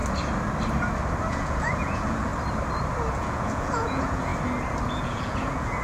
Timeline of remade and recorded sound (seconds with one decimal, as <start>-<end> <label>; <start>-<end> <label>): 0.0-1.3 recorded; 1.3-2.3 remade; 2.3-3.1 recorded; 3.1-4.3 remade; 4.3-4.9 recorded; 4.9-5.8 remade